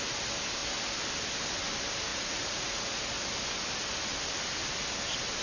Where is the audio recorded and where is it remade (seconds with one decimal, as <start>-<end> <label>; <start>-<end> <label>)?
0.0-2.1 recorded; 2.1-3.0 remade; 3.0-5.4 recorded